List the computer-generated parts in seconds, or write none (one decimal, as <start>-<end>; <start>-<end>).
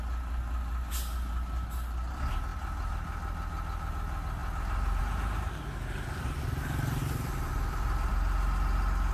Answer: 7.0-8.1